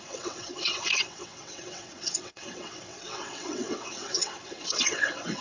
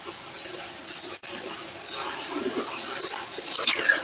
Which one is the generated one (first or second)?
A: first